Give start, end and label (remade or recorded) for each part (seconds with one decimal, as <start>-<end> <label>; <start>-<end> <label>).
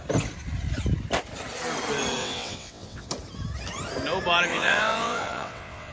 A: 0.0-2.2 recorded; 2.2-3.1 remade; 3.1-4.5 recorded; 4.5-5.9 remade